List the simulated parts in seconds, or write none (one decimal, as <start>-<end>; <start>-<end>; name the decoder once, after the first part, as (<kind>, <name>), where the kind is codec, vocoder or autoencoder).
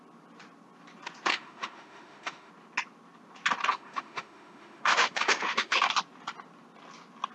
1.3-2.5 (autoencoder, DAC-VAE); 3.7-5.9